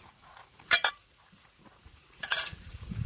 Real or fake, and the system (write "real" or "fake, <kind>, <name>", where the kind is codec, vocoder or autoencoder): fake, vocoder, Vocos